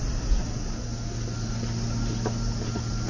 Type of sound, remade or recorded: recorded